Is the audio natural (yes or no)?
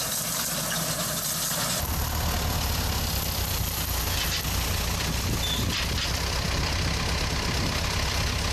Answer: yes